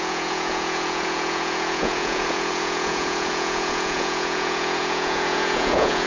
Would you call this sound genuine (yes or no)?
no